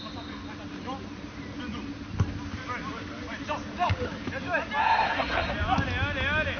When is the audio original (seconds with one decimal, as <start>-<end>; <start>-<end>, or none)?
0.0-4.8; 5.5-6.6